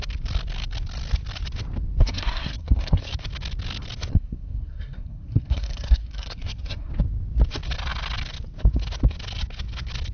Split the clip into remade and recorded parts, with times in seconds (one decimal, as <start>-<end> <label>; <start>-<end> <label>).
0.0-2.0 recorded; 2.0-3.1 remade; 3.1-4.1 recorded; 4.1-6.9 remade; 6.9-10.1 recorded